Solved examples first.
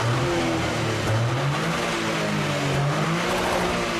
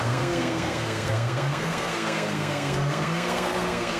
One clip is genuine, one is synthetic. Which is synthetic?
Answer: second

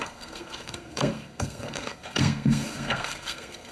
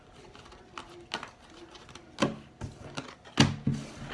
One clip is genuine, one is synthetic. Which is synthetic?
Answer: first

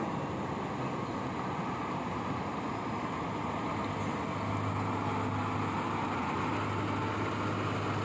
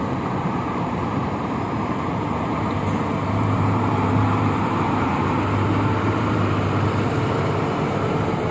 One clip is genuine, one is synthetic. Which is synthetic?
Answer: second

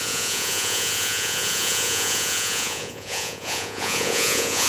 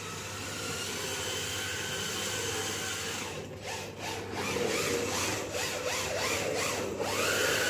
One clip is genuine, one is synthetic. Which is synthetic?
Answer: first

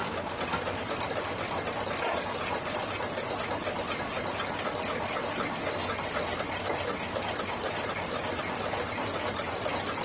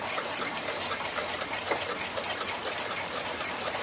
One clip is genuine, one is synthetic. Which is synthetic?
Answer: second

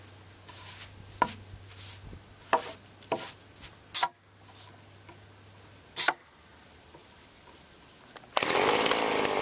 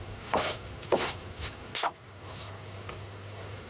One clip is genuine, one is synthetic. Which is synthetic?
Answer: second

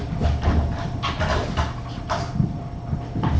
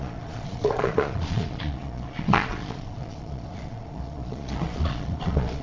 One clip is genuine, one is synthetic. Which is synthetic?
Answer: second